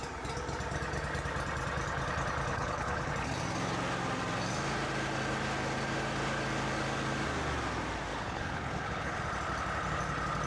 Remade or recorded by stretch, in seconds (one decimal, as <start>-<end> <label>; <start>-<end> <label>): 0.0-2.5 recorded; 2.5-3.1 remade; 3.1-8.1 recorded; 8.1-9.2 remade; 9.2-10.5 recorded